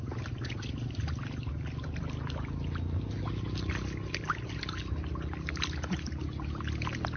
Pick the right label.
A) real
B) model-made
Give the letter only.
A